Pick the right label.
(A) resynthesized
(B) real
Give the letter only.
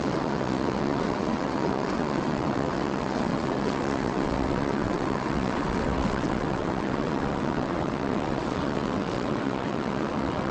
A